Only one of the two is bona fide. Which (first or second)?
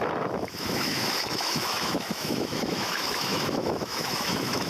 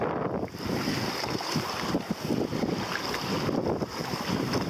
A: second